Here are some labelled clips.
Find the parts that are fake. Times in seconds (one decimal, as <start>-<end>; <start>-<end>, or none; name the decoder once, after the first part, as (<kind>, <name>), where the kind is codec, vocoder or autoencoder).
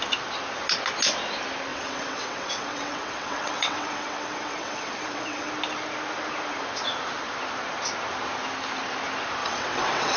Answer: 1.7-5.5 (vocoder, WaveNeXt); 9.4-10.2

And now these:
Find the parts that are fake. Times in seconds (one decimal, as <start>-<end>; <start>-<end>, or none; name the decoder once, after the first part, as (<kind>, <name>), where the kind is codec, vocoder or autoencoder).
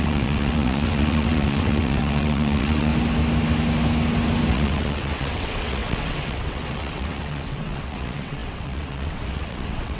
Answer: 0.0-2.9 (vocoder, WaveNeXt); 4.5-10.0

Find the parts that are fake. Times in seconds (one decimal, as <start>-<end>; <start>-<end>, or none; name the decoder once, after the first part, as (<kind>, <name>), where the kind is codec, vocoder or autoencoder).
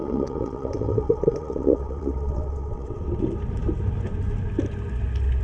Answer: 0.0-3.2 (vocoder, WaveNeXt)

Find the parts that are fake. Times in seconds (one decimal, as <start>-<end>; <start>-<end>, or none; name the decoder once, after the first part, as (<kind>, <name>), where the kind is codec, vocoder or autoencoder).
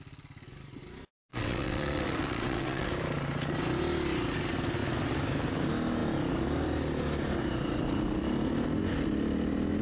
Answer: 1.3-2.9 (vocoder, WaveNeXt)